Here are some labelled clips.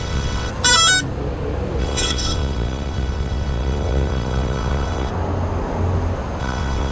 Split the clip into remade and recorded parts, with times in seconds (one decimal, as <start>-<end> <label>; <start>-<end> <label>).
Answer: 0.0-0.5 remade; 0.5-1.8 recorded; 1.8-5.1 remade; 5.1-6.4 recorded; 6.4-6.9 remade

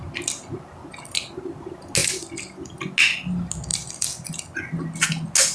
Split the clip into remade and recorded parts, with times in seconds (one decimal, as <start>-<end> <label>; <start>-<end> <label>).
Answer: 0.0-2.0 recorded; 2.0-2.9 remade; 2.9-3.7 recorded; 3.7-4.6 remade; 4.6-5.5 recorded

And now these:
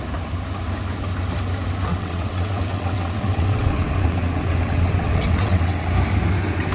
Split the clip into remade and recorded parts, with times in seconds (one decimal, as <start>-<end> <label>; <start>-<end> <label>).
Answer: 0.0-1.9 recorded; 1.9-5.9 remade; 5.9-6.7 recorded

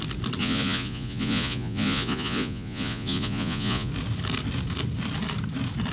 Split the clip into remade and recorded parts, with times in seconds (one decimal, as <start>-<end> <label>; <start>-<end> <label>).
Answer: 0.0-0.4 recorded; 0.4-3.9 remade; 3.9-5.9 recorded

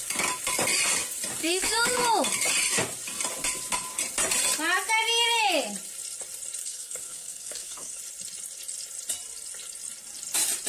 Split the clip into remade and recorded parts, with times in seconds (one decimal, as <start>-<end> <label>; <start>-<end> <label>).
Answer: 0.0-1.4 recorded; 1.4-2.0 remade; 2.0-6.6 recorded; 6.6-8.0 remade; 8.0-10.7 recorded

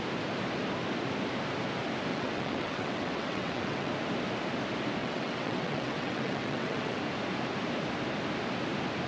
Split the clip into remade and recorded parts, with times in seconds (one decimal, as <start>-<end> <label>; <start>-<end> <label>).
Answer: 0.0-2.1 recorded; 2.1-3.9 remade; 3.9-5.0 recorded; 5.0-7.0 remade; 7.0-9.1 recorded